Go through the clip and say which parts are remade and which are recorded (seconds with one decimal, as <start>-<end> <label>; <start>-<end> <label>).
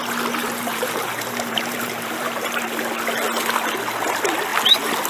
0.0-0.4 recorded; 0.4-2.8 remade; 2.8-5.1 recorded